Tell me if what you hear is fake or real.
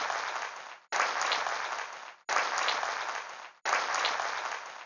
real